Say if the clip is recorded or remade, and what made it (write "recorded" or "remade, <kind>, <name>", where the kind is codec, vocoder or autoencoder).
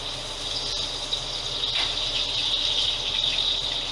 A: recorded